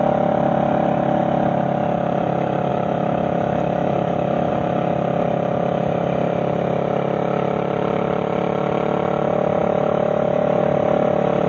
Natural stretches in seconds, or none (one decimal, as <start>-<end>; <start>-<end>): 0.0-2.7; 4.5-9.6; 10.6-11.5